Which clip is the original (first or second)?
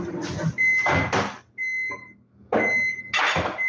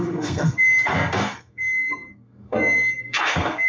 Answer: first